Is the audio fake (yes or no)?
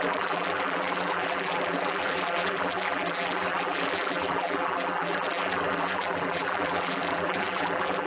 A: yes